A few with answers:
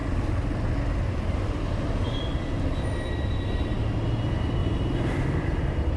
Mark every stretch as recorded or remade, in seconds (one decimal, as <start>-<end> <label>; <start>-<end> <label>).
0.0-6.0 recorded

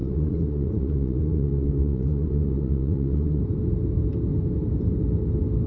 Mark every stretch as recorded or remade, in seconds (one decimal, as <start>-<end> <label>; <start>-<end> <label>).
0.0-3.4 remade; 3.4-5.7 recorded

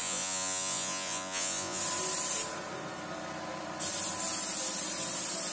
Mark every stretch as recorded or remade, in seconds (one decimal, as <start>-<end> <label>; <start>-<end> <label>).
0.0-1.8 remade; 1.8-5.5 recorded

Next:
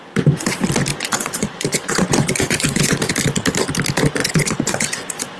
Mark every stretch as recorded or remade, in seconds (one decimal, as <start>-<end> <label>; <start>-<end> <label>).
0.0-0.9 recorded; 0.9-3.1 remade; 3.1-4.2 recorded; 4.2-5.4 remade

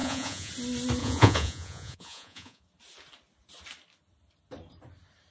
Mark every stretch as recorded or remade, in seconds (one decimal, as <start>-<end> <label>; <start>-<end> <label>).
0.0-0.5 remade; 0.5-1.0 recorded; 1.0-2.6 remade; 2.6-5.3 recorded